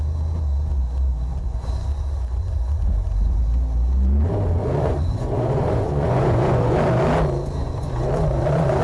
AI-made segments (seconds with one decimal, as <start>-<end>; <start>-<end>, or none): 1.3-3.4; 4.6-6.8; 7.6-8.8